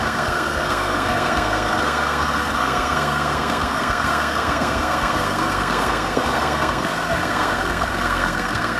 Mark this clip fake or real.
fake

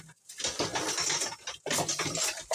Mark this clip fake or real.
real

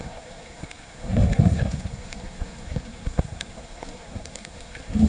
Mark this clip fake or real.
fake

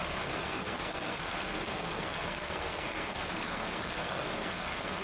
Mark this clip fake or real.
fake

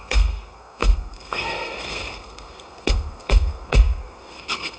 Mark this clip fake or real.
fake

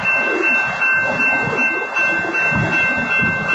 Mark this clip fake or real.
real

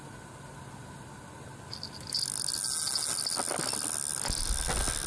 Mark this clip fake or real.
real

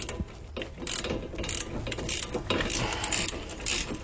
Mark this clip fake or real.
real